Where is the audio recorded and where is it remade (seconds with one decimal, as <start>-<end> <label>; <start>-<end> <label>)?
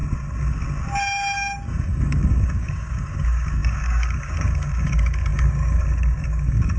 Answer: 0.0-2.0 recorded; 2.0-6.8 remade